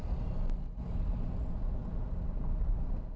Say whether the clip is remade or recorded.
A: recorded